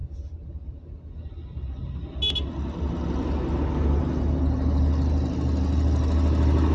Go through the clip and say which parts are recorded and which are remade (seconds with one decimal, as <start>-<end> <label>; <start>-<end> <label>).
0.0-6.7 recorded